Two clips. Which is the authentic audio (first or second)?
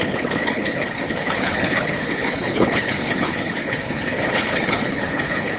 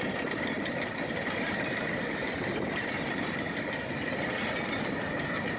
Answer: second